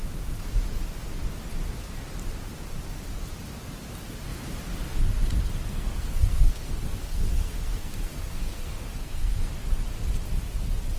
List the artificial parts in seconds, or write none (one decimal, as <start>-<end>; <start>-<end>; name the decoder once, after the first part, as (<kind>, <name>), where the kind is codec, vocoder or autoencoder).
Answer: 5.7-9.5 (codec, SNAC)